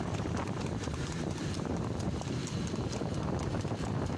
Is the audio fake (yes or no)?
yes